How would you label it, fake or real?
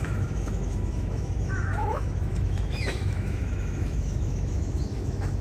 fake